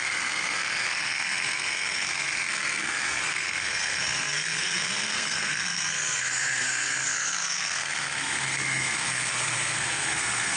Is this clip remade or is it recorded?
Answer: remade